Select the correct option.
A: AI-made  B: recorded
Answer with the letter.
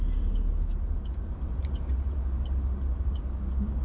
B